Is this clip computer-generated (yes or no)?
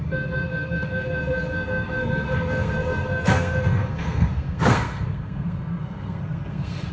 yes